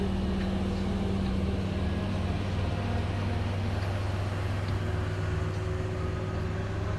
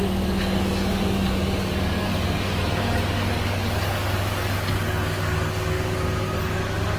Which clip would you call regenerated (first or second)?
second